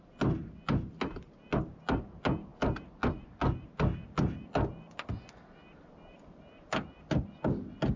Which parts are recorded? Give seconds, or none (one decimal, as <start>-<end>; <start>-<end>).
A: 0.0-8.0